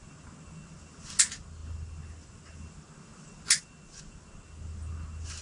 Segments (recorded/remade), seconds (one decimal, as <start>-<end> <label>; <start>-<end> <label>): 0.0-5.4 recorded